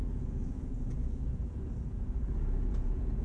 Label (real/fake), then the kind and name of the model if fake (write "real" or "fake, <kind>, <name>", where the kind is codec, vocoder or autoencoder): fake, vocoder, Vocos